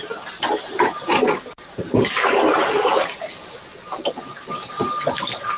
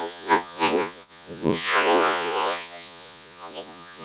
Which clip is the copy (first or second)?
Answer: second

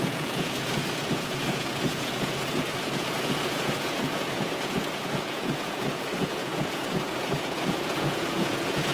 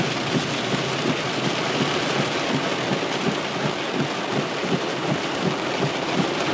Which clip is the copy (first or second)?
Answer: first